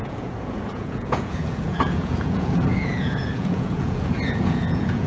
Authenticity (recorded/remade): remade